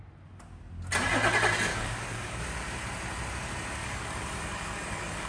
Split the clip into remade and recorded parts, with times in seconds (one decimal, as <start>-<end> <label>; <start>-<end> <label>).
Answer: 0.0-1.7 recorded; 1.7-2.4 remade; 2.4-3.8 recorded; 3.8-5.3 remade

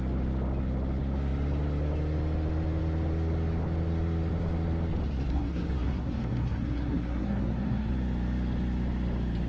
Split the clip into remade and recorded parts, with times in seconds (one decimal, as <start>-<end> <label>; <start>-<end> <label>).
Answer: 0.0-5.3 recorded; 5.3-7.9 remade; 7.9-9.5 recorded

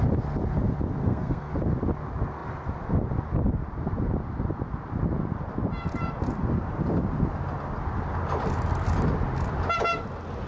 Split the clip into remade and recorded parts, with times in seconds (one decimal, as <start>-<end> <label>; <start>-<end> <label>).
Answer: 0.0-1.0 recorded; 1.0-1.5 remade; 1.5-10.5 recorded

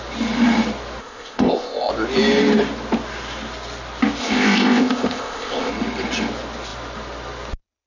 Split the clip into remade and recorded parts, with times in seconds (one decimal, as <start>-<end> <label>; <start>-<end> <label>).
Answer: 0.0-1.0 recorded; 1.0-1.9 remade; 1.9-4.2 recorded; 4.2-5.7 remade; 5.7-7.9 recorded

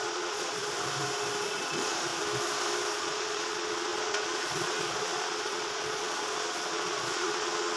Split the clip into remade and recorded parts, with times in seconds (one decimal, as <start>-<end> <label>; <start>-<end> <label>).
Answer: 0.0-0.6 remade; 0.6-1.4 recorded; 1.4-2.1 remade; 2.1-3.0 recorded; 3.0-7.8 remade

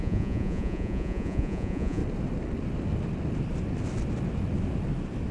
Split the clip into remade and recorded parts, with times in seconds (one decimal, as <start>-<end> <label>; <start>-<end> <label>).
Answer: 0.0-2.0 remade; 2.0-5.3 recorded

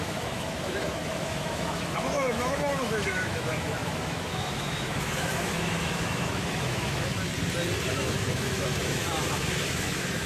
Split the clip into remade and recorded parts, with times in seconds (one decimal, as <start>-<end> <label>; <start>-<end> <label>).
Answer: 0.0-7.3 remade; 7.3-7.9 recorded; 7.9-10.3 remade